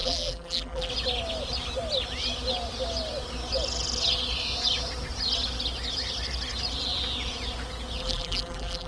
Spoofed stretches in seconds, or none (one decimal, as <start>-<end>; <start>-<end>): 0.0-0.9; 8.0-8.9